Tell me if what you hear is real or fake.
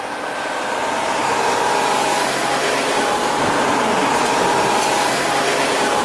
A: fake